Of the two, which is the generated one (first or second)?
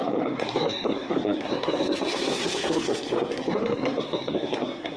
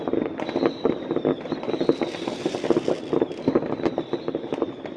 first